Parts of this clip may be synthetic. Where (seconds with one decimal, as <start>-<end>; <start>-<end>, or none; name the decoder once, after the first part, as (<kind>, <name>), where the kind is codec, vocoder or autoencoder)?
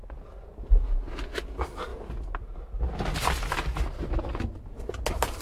none